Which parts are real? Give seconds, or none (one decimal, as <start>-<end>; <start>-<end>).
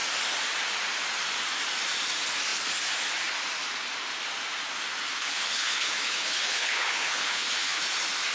0.0-5.1; 7.8-8.3